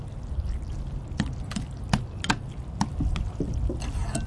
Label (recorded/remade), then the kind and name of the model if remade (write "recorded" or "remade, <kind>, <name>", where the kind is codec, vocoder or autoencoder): recorded